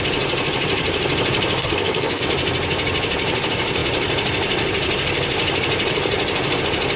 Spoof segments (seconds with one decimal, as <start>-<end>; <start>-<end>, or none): 1.6-2.2